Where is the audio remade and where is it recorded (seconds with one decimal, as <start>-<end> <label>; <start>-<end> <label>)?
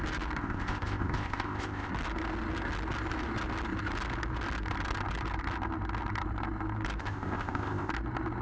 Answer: 0.0-0.4 recorded; 0.4-1.9 remade; 1.9-7.0 recorded; 7.0-7.9 remade; 7.9-8.4 recorded